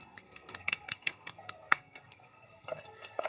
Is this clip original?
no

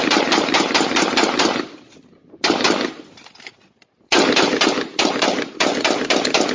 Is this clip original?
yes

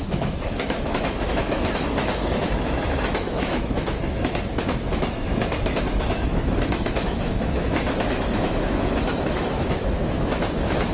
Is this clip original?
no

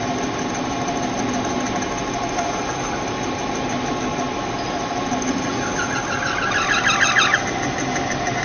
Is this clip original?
yes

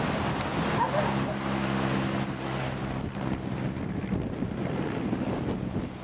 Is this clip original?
yes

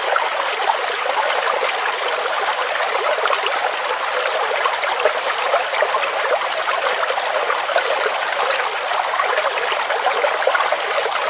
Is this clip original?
yes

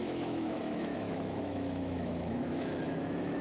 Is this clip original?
no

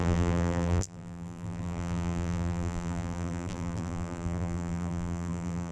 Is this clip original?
no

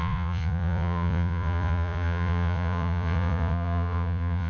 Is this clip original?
no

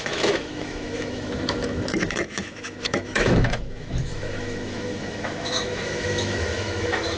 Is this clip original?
no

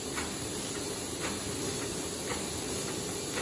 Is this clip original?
yes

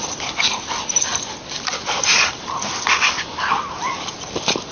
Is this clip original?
yes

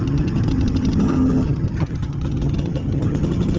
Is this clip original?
no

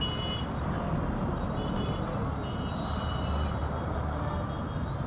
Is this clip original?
yes